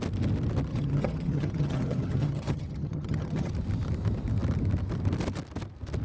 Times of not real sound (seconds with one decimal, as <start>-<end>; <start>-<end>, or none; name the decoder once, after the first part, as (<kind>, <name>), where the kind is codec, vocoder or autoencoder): 0.7-3.5 (vocoder, HiFi-GAN)